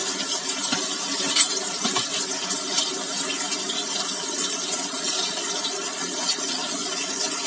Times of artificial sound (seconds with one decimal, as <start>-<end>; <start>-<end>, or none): 4.2-7.1